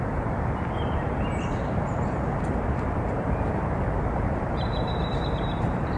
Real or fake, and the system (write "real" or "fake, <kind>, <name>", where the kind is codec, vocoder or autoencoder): fake, vocoder, BigVGAN v2